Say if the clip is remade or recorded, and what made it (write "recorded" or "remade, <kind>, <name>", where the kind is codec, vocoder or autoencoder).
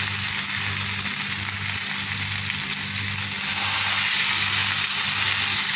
recorded